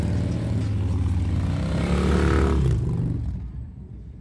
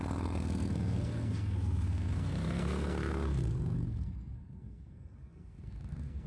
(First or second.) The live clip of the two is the first